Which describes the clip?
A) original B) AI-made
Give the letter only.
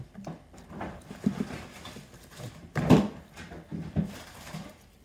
A